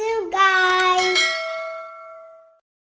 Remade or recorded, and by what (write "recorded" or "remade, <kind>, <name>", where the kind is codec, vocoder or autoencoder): remade, codec, DAC